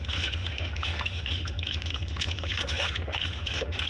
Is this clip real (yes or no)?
no